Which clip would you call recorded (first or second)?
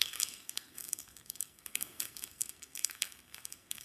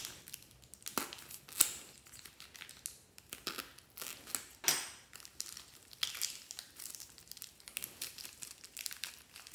second